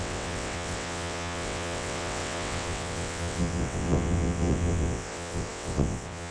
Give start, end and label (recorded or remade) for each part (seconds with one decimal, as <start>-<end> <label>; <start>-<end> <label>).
0.0-6.3 remade